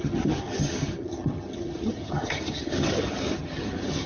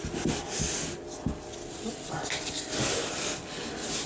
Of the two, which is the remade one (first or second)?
first